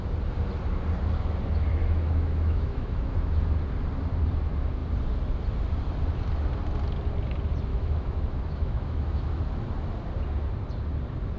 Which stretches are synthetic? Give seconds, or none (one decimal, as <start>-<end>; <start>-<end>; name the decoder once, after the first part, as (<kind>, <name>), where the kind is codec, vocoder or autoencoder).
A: 1.7-3.4 (autoencoder, DAC-VAE); 7.7-9.4